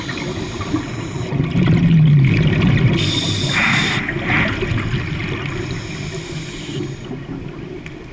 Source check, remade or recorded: recorded